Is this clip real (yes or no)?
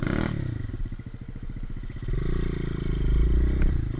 yes